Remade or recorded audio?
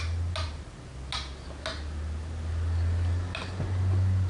recorded